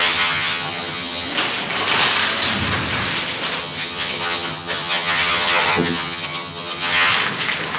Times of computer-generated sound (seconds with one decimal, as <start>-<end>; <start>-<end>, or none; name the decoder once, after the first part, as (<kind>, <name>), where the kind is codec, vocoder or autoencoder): 0.0-1.3 (vocoder, HiFi-GAN); 3.6-7.1